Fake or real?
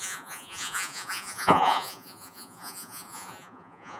fake